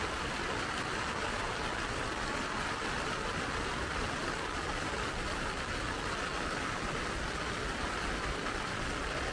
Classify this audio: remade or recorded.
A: recorded